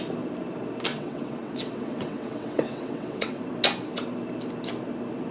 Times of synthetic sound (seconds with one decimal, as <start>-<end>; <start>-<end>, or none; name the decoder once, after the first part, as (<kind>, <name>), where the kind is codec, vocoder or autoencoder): 0.9-3.4 (vocoder, WaveNeXt)